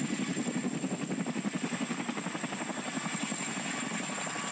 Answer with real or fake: real